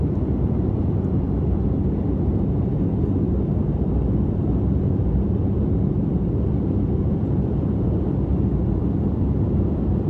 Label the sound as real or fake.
fake